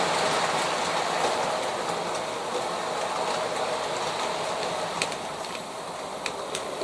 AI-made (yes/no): no